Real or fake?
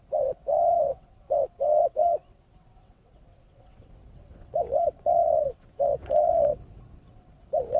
fake